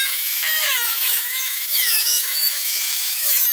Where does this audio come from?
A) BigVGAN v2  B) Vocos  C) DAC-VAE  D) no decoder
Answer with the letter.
C